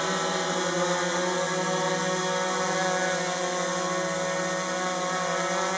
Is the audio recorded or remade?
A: recorded